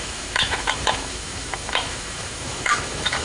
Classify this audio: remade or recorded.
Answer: remade